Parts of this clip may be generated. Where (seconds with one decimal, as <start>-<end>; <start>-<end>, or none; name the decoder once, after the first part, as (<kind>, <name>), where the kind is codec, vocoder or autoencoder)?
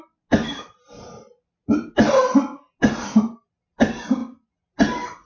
none